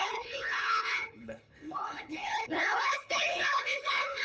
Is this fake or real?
fake